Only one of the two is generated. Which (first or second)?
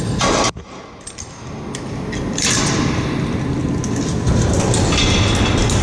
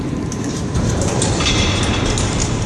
second